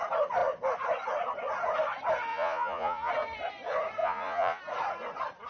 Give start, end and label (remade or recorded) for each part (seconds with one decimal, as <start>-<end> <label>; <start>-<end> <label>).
0.0-2.3 recorded; 2.3-3.1 remade; 3.1-4.0 recorded; 4.0-4.6 remade; 4.6-5.5 recorded

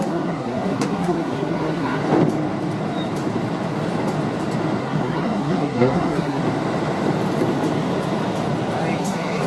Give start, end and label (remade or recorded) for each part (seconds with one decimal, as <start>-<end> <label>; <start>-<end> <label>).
0.0-2.0 remade; 2.0-4.8 recorded; 4.8-6.4 remade; 6.4-9.0 recorded; 9.0-9.5 remade